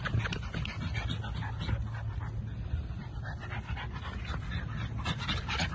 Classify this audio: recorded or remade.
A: recorded